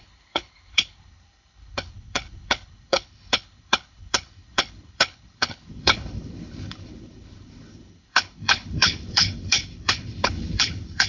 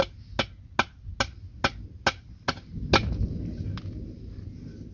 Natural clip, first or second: second